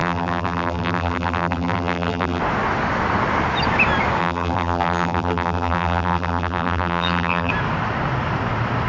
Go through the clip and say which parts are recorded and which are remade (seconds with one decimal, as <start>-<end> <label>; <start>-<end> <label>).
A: 0.0-2.4 remade; 2.4-4.2 recorded; 4.2-7.5 remade; 7.5-8.9 recorded